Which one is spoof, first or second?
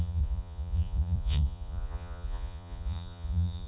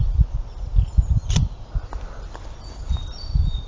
first